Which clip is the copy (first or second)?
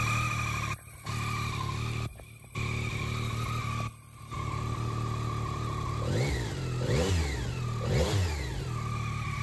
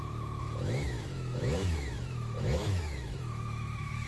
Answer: second